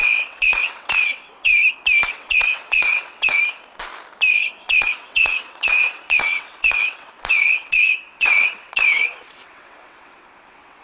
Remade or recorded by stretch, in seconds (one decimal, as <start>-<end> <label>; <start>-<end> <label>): 0.0-1.5 remade; 1.5-2.1 recorded; 2.1-3.4 remade; 3.4-4.3 recorded; 4.3-10.8 remade